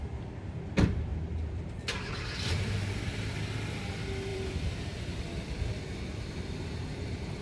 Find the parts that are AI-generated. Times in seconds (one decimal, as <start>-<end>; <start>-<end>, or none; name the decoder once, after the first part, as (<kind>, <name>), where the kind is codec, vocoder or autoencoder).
1.1-3.3 (vocoder, BigVGAN v2); 4.3-5.8